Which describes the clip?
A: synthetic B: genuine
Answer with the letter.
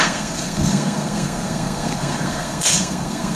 A